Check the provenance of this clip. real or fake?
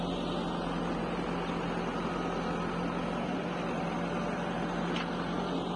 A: real